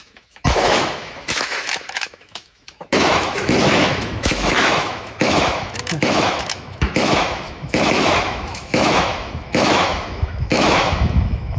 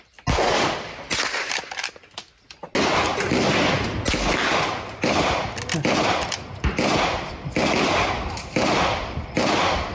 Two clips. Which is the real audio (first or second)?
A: second